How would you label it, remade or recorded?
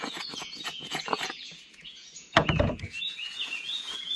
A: remade